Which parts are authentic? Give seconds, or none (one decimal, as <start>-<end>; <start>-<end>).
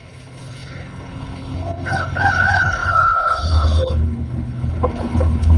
none